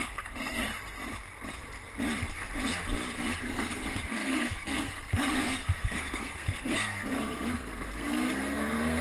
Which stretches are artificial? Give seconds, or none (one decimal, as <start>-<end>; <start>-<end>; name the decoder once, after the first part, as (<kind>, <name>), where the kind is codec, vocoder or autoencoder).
0.0-0.7 (codec, SNAC); 3.4-9.0